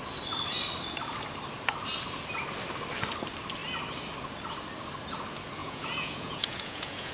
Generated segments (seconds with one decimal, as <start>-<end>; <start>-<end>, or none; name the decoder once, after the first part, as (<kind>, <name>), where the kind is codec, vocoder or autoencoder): 5.6-7.1 (vocoder, Vocos)